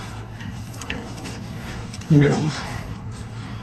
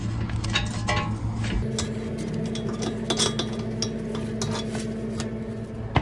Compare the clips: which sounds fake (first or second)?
first